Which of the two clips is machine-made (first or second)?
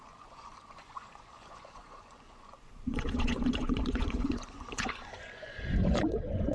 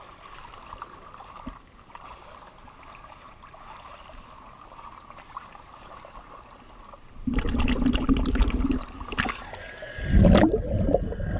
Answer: first